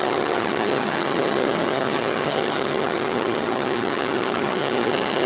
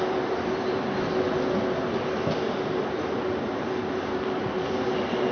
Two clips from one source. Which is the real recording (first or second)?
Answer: second